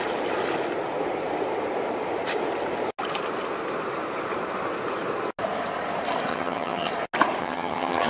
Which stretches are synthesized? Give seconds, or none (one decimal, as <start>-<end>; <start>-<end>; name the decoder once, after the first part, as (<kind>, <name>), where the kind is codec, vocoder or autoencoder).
6.3-6.9 (vocoder, HiFi-GAN); 7.4-8.1